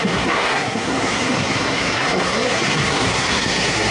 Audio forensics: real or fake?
fake